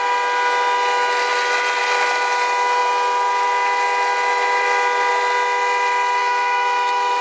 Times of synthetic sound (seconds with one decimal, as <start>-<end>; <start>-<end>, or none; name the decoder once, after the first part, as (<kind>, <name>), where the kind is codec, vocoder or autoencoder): 6.2-7.2 (autoencoder, DAC-VAE)